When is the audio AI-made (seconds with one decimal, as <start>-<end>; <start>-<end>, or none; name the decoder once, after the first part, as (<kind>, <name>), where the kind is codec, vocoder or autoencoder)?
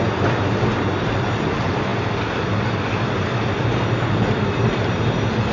none